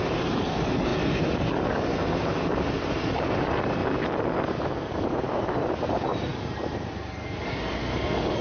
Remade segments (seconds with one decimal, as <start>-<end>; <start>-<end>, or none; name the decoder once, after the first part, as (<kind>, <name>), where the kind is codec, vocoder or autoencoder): 0.0-0.9 (vocoder, BigVGAN v2); 2.9-3.8; 4.9-8.4